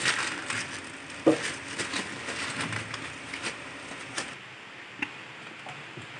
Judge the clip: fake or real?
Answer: real